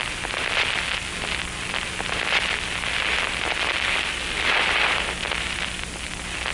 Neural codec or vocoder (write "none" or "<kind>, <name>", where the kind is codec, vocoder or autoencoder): none